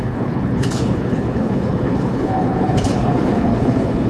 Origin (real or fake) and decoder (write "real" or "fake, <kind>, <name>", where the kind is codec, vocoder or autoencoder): fake, codec, HILCodec